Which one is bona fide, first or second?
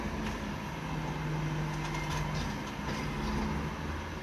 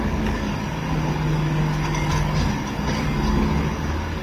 first